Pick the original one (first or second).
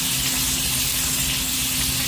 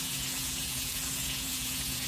first